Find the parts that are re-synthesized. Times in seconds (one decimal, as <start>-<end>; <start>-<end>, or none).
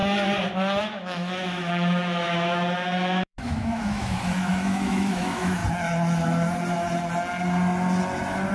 0.8-5.6